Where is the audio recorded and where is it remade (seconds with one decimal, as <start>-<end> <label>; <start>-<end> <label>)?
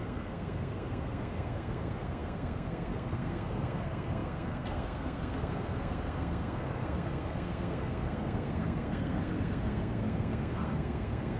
0.0-11.4 remade